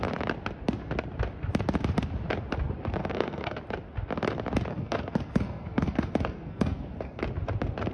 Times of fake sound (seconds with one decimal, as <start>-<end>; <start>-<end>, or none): 3.0-3.6; 4.7-7.2